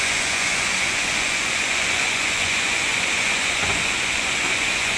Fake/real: fake